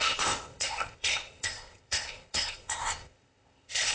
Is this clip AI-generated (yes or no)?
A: yes